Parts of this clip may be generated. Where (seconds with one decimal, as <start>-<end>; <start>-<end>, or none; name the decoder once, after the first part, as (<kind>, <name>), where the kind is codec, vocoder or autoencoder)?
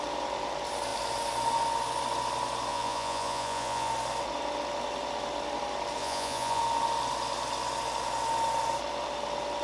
2.7-3.9 (vocoder, Vocos); 6.0-6.6